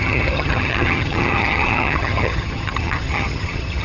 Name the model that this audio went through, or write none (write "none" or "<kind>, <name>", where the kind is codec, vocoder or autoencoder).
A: vocoder, HiFi-GAN